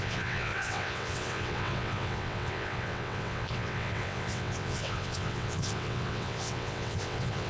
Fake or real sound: fake